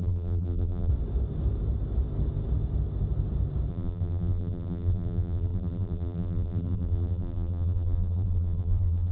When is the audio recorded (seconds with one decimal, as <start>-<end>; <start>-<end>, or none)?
0.9-3.7